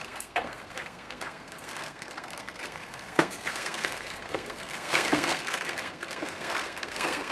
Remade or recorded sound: remade